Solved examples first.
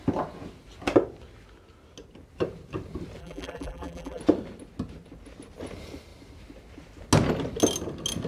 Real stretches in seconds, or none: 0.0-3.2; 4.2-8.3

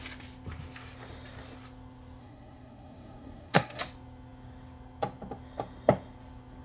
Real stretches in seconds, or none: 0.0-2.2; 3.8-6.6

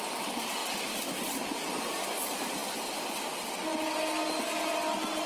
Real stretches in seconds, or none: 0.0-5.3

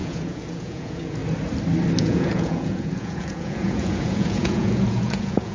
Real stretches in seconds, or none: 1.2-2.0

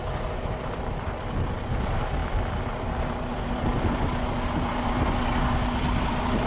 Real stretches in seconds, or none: 0.0-6.5